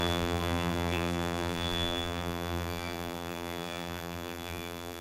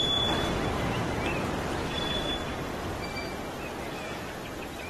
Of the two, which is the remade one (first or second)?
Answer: first